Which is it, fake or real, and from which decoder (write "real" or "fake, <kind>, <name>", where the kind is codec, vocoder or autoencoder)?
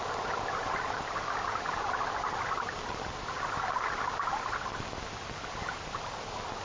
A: real